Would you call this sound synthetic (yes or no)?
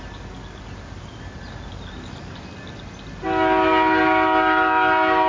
no